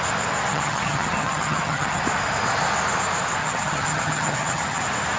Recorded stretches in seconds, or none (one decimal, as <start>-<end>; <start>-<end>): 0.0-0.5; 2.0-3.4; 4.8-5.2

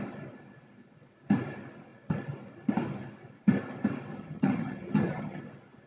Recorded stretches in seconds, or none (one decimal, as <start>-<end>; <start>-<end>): 0.0-4.1; 5.4-5.9

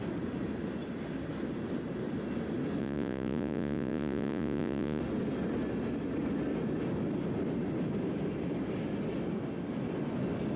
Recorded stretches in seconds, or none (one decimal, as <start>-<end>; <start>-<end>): 0.0-2.8; 5.0-10.6

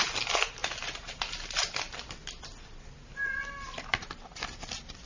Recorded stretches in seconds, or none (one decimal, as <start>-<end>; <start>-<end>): 0.0-5.1

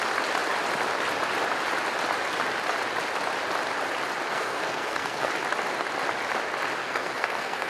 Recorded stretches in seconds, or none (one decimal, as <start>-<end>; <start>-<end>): 0.0-4.3; 5.3-6.8

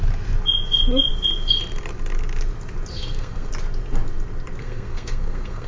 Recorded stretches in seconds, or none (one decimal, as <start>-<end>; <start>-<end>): 0.0-2.9; 3.5-4.6